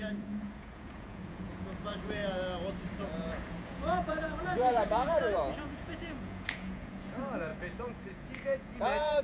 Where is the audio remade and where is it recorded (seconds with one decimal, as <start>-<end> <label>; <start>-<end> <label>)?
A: 0.0-2.2 remade; 2.2-3.0 recorded; 3.0-9.2 remade